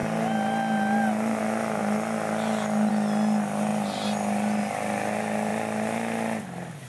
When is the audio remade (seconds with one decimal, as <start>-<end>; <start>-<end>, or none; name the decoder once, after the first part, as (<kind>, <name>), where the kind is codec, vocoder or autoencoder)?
none